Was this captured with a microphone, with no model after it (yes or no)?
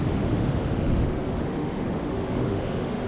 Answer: no